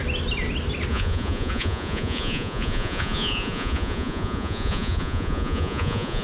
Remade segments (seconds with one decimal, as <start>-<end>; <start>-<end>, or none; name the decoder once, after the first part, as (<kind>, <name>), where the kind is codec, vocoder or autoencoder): 0.9-6.2 (vocoder, Vocos)